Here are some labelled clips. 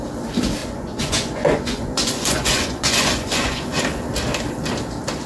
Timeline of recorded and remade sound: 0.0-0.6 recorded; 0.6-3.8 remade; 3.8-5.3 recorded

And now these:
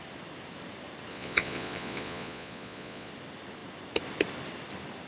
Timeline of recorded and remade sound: 0.0-1.1 recorded; 1.1-3.1 remade; 3.1-5.1 recorded

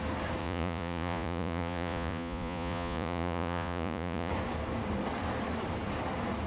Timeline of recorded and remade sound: 0.0-0.4 recorded; 0.4-4.3 remade; 4.3-6.5 recorded

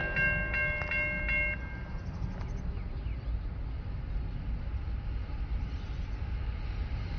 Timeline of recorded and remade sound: 0.0-7.2 recorded

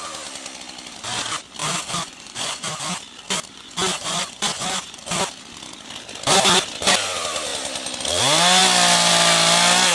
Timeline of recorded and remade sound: 0.0-1.6 recorded; 1.6-2.7 remade; 2.7-3.5 recorded; 3.5-5.0 remade; 5.0-9.9 recorded

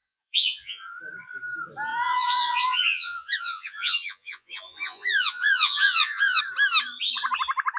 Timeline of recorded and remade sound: 0.0-1.0 remade; 1.0-1.9 recorded; 1.9-6.4 remade; 6.4-7.8 recorded

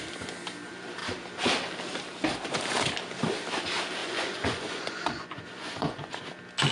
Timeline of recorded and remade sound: 0.0-4.0 recorded; 4.0-6.2 remade; 6.2-6.7 recorded

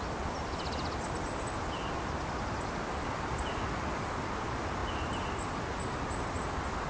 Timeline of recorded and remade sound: 0.0-6.9 recorded